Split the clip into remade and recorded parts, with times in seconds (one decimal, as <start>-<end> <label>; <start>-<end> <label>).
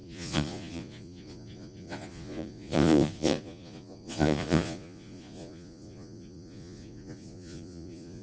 0.0-8.2 remade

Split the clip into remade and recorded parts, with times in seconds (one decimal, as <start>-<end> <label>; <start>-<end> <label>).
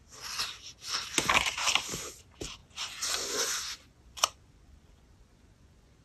0.0-2.6 recorded; 2.6-6.0 remade